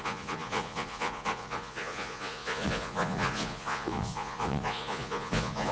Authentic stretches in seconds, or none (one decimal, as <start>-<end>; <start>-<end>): none